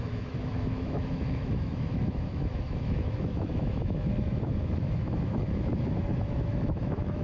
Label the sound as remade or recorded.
remade